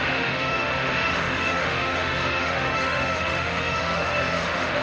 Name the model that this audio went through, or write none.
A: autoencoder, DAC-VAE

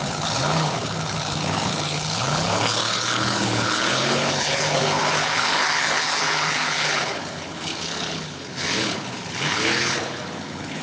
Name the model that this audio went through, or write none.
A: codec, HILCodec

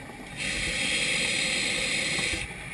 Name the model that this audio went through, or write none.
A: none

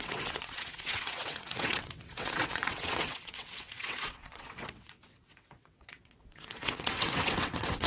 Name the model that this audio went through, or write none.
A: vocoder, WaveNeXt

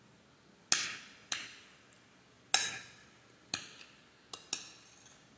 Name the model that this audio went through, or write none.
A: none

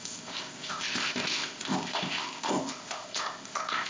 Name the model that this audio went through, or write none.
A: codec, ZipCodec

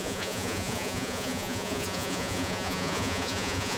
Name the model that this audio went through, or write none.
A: vocoder, Vocos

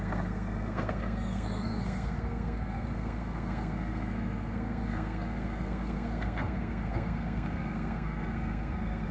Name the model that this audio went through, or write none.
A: codec, SNAC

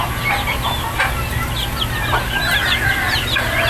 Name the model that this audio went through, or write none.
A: none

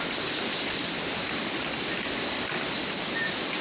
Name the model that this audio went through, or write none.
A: none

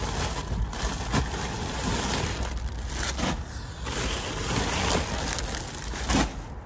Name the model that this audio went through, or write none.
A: none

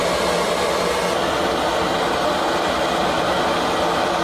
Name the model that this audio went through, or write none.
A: none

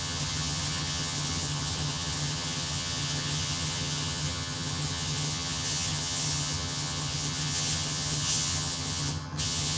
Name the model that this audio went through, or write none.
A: vocoder, HiFi-GAN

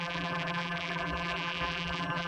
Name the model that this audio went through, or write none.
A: vocoder, BigVGAN v2